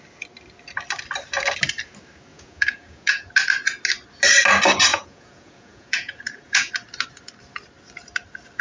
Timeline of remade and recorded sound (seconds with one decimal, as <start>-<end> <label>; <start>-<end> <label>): 0.0-2.3 recorded; 2.3-3.3 remade; 3.3-4.9 recorded; 4.9-6.7 remade; 6.7-8.6 recorded